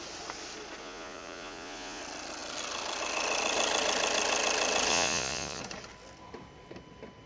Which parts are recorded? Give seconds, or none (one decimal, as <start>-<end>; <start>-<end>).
0.0-0.8; 2.0-4.9; 5.6-7.3